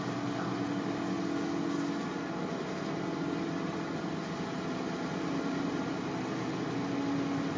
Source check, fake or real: real